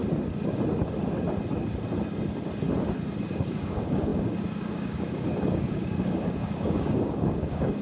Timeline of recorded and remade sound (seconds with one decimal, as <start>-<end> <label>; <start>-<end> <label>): 0.0-3.3 recorded; 3.3-7.8 remade

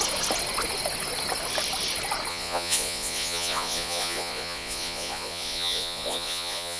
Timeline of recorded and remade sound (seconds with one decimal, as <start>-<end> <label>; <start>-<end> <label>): 0.0-2.3 recorded; 2.3-6.8 remade

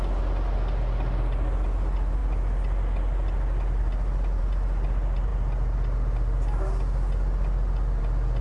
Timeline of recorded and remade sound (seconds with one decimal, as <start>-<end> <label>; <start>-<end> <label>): 0.0-8.4 recorded

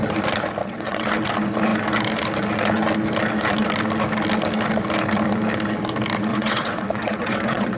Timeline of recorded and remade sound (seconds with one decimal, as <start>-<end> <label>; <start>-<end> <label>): 0.0-0.6 recorded; 0.6-1.1 remade; 1.1-6.3 recorded; 6.3-7.8 remade

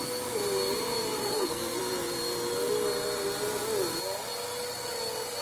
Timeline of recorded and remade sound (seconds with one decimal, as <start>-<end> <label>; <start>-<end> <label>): 0.0-1.2 recorded; 1.2-1.8 remade; 1.8-5.4 recorded

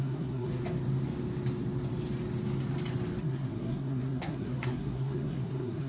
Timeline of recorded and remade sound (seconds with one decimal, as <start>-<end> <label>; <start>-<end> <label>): 0.0-0.6 remade; 0.6-3.2 recorded; 3.2-5.9 remade